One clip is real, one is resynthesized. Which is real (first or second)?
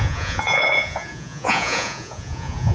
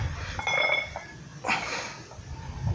second